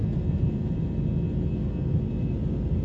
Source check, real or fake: real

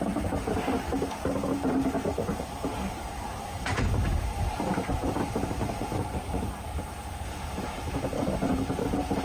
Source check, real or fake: fake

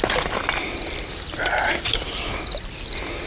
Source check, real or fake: real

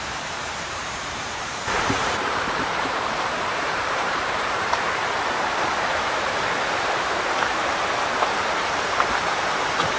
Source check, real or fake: fake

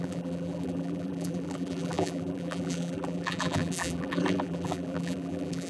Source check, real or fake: fake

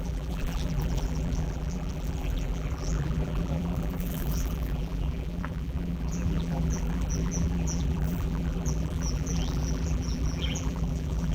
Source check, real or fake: fake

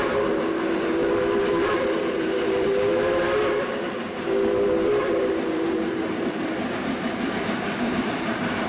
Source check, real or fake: fake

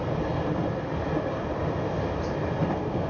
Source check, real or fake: real